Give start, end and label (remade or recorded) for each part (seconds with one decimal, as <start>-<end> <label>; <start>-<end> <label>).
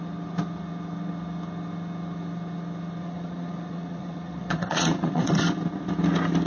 0.0-3.0 recorded; 3.0-5.3 remade; 5.3-6.5 recorded